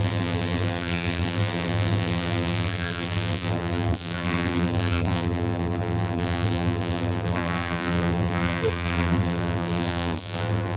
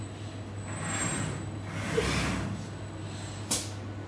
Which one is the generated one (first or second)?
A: first